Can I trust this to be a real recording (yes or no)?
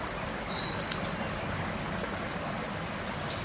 yes